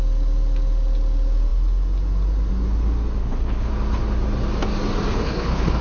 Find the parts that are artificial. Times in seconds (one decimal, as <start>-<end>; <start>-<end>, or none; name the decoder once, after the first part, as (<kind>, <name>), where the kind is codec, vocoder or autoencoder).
3.2-3.7 (codec, HILCodec); 5.1-5.8